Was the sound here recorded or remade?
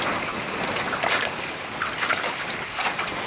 recorded